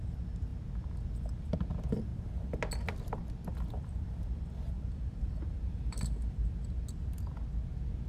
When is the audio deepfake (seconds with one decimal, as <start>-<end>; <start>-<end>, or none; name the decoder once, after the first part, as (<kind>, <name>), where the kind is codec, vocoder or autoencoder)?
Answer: 2.1-2.7 (vocoder, BigVGAN v2); 3.5-6.6